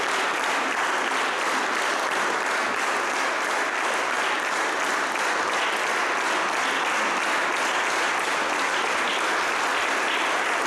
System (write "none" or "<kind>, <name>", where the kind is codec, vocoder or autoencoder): none